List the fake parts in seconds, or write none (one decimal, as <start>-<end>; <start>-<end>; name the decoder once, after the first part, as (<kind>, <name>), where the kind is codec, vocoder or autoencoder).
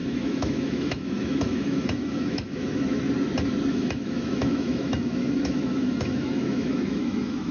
0.0-3.1 (autoencoder, DAC-VAE); 3.7-7.5